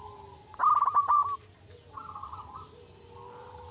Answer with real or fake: real